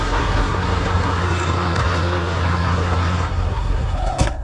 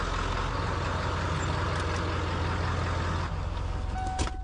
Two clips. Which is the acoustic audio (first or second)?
second